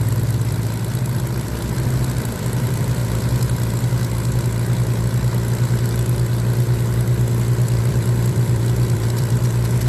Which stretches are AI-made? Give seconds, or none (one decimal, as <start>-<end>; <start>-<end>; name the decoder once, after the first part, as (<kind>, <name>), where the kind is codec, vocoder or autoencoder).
0.0-3.0 (vocoder, BigVGAN v2); 7.8-9.9

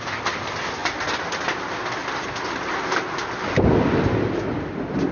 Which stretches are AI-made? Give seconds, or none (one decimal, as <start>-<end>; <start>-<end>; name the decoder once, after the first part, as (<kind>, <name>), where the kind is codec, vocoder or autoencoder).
2.0-2.7 (vocoder, BigVGAN v2)

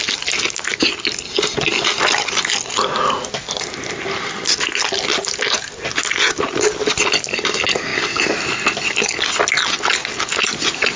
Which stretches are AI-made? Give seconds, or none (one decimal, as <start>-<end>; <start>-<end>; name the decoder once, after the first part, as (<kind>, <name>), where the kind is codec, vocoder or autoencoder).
none

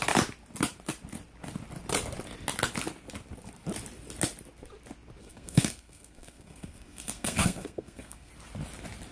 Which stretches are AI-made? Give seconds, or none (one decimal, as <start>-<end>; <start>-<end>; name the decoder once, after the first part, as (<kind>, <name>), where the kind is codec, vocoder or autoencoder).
5.2-8.3 (codec, SNAC)

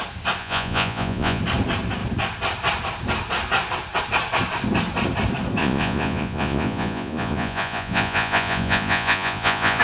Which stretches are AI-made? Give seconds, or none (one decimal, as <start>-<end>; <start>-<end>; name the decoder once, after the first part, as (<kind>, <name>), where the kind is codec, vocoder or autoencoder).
0.4-1.4 (vocoder, Vocos); 5.6-9.8

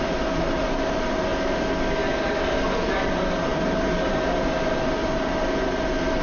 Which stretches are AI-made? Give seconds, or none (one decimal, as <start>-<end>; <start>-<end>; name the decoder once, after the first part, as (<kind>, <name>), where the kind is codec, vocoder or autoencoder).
0.0-1.3 (vocoder, BigVGAN v2); 2.9-6.2